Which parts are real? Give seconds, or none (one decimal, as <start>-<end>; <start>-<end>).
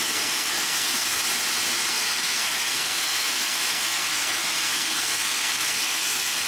1.2-1.9